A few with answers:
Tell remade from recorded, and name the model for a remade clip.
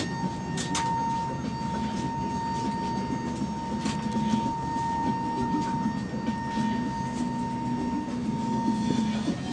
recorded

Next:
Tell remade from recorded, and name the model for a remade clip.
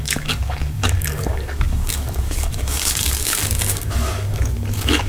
remade, codec, DAC